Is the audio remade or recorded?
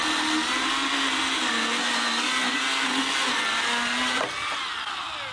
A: recorded